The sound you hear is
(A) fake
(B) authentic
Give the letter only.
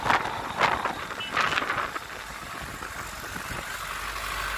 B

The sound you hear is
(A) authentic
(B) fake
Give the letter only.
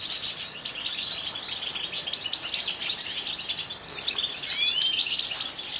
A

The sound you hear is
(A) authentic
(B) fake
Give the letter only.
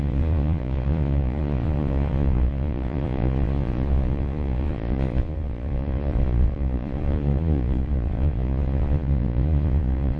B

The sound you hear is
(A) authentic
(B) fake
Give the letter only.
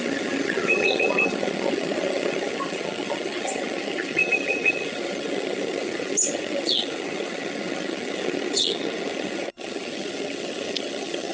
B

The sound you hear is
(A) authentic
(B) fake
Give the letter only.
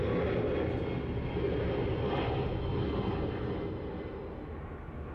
A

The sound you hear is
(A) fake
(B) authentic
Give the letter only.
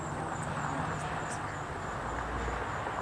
B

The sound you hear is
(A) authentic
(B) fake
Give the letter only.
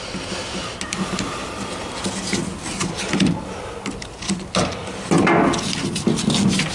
A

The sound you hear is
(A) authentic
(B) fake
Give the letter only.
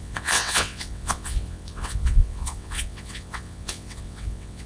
B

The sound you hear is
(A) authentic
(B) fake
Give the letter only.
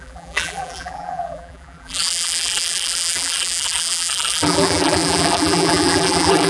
B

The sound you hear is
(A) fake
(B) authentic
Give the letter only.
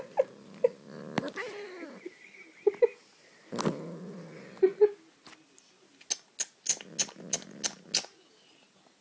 B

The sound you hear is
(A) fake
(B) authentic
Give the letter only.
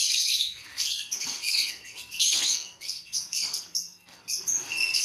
A